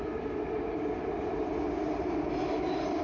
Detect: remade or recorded recorded